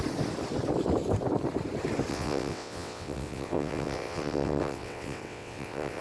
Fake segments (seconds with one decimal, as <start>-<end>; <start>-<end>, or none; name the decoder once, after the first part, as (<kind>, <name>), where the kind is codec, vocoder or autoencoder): 2.1-6.0 (vocoder, WaveNeXt)